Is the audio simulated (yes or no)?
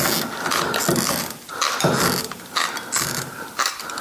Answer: no